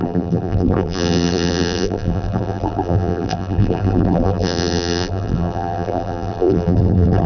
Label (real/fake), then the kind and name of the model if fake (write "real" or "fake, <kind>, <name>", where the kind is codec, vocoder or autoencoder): fake, vocoder, BigVGAN v2